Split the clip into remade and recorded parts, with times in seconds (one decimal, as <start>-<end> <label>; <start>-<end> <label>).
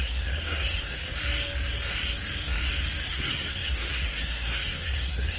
0.0-1.0 remade; 1.0-3.1 recorded; 3.1-5.4 remade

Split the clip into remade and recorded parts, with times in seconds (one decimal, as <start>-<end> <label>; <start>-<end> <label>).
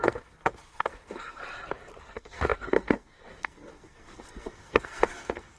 0.0-1.4 remade; 1.4-2.0 recorded; 2.0-5.6 remade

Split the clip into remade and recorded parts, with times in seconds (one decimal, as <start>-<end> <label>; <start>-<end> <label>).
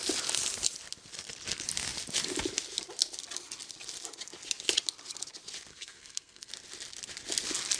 0.0-5.7 recorded; 5.7-6.5 remade; 6.5-7.8 recorded